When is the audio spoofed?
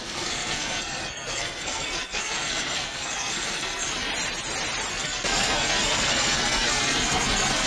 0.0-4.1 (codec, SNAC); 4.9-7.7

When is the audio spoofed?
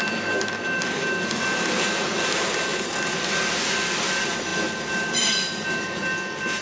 none